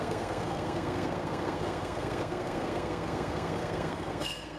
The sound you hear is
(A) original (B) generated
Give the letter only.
B